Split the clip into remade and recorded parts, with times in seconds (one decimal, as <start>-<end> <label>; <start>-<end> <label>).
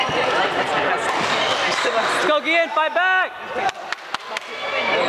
0.0-5.1 recorded